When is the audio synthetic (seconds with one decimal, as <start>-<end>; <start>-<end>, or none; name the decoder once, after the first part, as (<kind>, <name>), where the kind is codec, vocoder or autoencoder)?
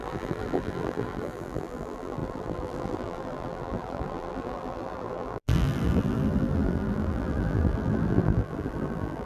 0.0-9.3 (vocoder, BigVGAN v2)